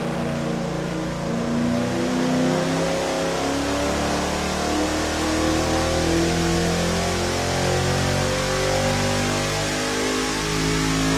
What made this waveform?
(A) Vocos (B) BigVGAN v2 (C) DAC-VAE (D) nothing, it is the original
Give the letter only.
D